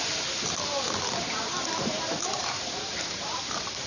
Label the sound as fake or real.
fake